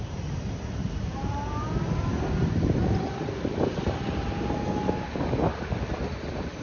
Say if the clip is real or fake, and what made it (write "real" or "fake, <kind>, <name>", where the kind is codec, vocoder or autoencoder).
real